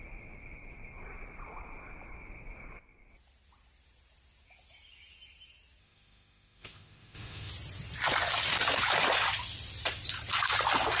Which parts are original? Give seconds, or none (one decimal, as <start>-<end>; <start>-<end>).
0.0-5.8; 7.5-11.0